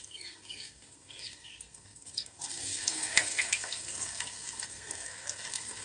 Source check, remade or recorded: remade